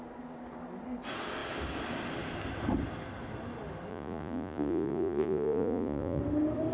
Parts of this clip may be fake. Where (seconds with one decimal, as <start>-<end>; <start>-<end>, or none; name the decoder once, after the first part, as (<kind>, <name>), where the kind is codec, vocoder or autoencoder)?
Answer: 3.9-6.2 (vocoder, Vocos)